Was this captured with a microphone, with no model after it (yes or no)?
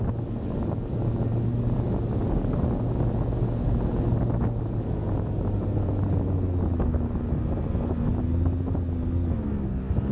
yes